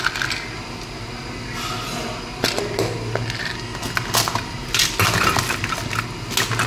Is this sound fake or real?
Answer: real